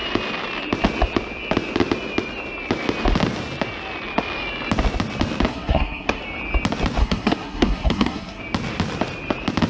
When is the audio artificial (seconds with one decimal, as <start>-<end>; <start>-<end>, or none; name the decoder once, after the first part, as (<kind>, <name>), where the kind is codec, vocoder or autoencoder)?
5.5-6.2 (codec, SNAC); 7.0-8.4